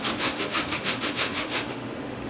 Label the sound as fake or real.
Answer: fake